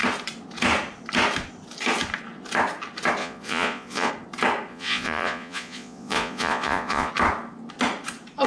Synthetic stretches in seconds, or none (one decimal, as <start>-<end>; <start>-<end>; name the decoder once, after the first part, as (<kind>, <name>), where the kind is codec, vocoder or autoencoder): 3.2-4.1 (vocoder, Vocos); 4.7-7.1